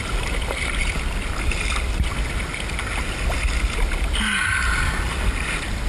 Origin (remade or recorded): recorded